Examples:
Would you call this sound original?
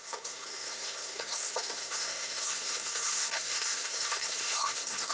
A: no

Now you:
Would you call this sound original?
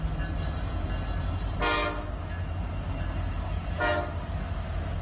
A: yes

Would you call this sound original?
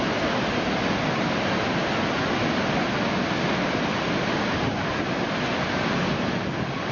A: yes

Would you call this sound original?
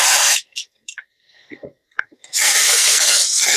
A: no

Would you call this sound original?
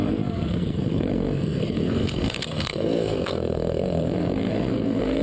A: no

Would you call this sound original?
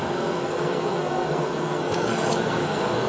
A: no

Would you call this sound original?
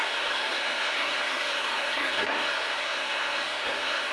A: no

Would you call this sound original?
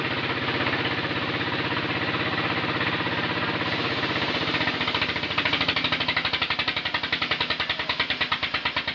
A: yes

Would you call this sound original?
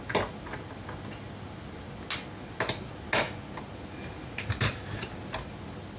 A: yes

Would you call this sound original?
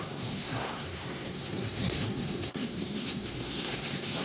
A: no